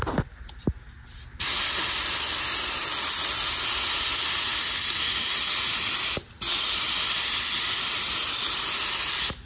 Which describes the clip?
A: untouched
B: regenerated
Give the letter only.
A